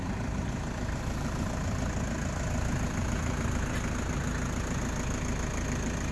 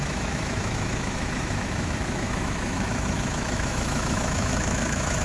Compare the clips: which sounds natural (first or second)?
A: first